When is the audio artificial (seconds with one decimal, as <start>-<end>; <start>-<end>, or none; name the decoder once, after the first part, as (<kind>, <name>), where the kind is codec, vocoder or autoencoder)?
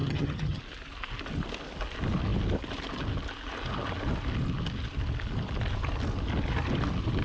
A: 0.0-0.6 (vocoder, HiFi-GAN)